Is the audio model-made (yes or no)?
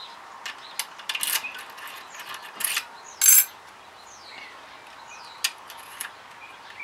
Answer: no